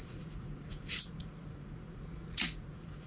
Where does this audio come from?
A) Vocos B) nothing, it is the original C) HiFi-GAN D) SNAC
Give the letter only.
A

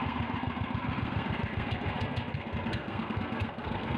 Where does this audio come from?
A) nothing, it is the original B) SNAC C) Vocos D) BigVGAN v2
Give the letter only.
B